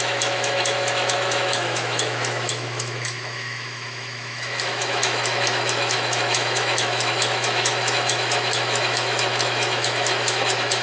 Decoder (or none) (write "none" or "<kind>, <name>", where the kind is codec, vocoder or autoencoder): autoencoder, DAC-VAE